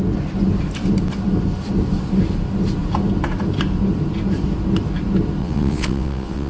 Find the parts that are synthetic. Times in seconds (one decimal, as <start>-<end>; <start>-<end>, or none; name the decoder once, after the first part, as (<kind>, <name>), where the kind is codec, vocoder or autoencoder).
5.4-6.5 (vocoder, WaveNeXt)